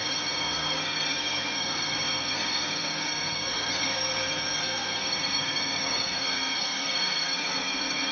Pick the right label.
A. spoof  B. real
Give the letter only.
A